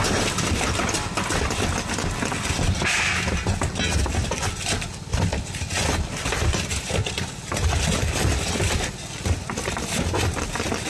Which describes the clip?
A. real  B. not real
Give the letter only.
A